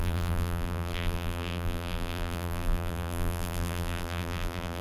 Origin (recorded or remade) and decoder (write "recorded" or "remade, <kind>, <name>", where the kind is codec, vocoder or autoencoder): remade, vocoder, BigVGAN v2